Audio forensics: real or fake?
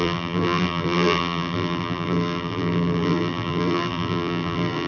fake